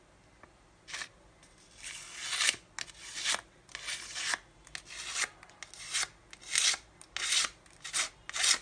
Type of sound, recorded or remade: recorded